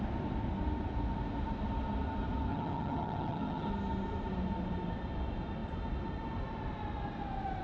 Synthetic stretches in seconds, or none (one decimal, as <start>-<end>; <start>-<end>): 2.5-3.7